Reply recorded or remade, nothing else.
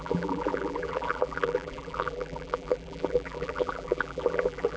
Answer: remade